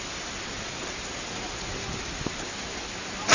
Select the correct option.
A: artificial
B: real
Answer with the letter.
B